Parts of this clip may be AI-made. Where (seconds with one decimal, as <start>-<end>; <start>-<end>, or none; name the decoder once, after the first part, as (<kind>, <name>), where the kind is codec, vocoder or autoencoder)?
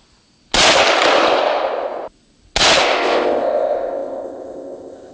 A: 2.8-5.1 (codec, ZipCodec)